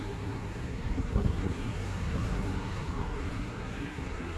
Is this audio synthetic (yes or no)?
yes